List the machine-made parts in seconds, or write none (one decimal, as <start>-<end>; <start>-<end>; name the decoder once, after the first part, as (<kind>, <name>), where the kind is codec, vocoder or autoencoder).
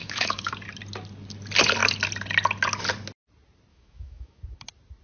0.0-0.5 (autoencoder, DAC-VAE); 3.7-4.4